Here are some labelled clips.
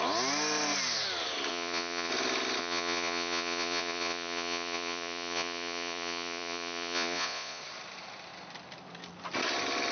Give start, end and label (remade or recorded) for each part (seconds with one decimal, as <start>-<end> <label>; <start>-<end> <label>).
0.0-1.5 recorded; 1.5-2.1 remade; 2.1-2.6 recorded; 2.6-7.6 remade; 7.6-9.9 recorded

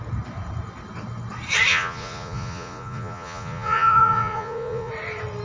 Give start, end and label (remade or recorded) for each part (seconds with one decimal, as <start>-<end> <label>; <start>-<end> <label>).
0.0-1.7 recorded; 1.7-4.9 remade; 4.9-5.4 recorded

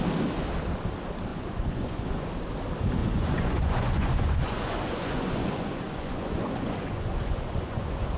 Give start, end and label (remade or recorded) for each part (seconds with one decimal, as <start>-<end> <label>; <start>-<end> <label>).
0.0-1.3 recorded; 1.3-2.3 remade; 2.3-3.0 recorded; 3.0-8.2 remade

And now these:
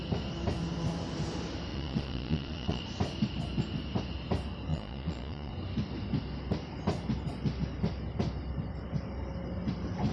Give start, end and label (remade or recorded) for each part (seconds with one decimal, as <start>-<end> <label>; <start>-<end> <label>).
0.0-1.7 recorded; 1.7-2.8 remade; 2.8-4.7 recorded; 4.7-5.5 remade; 5.5-10.1 recorded

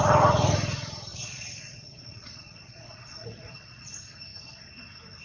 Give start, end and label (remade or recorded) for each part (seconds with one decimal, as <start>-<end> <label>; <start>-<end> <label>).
0.0-1.1 recorded; 1.1-3.8 remade; 3.8-5.2 recorded

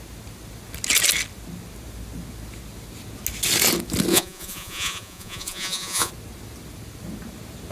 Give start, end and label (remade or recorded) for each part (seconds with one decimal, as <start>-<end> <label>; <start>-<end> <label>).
0.0-4.1 recorded; 4.1-6.1 remade; 6.1-7.7 recorded

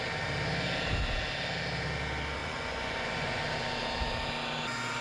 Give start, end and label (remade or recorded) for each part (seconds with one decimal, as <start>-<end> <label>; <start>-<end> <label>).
0.0-2.4 recorded; 2.4-3.4 remade; 3.4-5.0 recorded